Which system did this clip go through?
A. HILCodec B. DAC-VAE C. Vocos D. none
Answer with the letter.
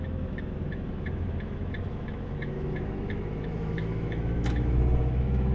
B